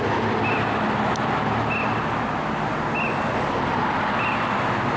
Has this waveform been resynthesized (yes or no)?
no